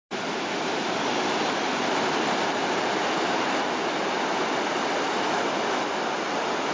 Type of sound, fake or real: real